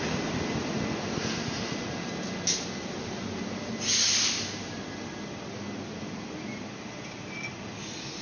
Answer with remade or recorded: recorded